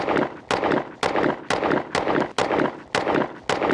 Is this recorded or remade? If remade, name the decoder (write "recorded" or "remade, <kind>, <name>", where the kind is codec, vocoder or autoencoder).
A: recorded